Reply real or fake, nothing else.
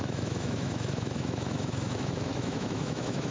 fake